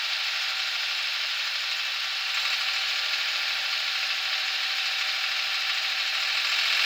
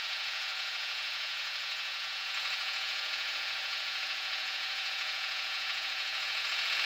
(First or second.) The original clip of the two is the first